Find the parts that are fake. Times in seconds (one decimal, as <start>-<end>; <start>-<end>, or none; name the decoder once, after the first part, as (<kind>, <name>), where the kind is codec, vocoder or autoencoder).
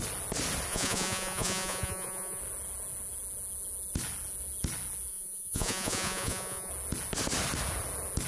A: 0.7-2.4 (vocoder, Vocos); 5.1-6.7